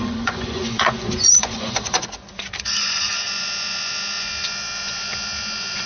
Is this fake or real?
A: fake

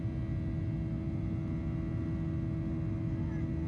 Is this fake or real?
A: real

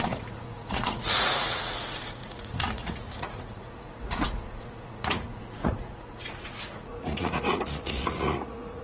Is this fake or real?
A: fake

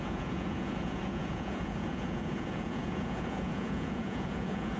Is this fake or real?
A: fake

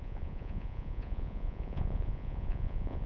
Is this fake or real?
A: fake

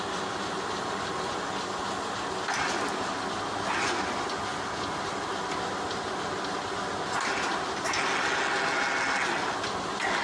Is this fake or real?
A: real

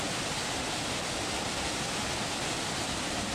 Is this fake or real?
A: real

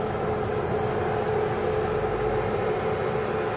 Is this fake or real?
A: real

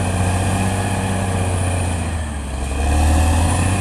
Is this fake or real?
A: real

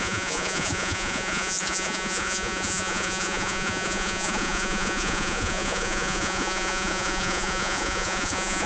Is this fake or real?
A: fake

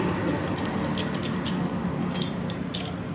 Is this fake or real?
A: real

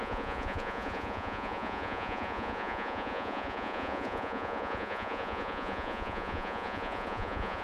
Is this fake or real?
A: fake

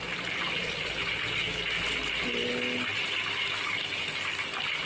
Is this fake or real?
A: real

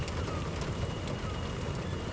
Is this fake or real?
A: real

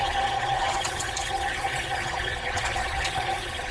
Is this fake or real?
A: fake